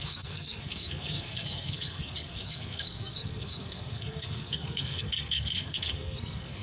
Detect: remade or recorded remade